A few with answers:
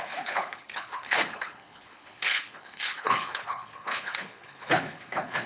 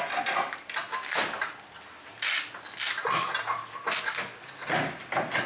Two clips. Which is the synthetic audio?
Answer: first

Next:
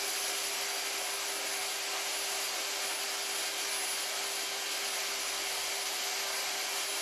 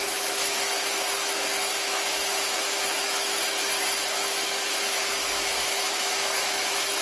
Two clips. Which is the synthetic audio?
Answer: second